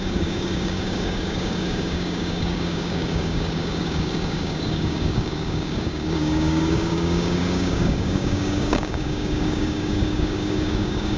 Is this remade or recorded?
remade